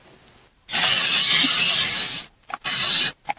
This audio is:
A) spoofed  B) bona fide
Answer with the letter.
B